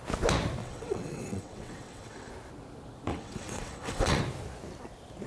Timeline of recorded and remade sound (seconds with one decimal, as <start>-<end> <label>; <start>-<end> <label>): 0.0-0.6 recorded; 0.6-2.3 remade; 2.3-3.1 recorded; 3.1-4.2 remade; 4.2-5.3 recorded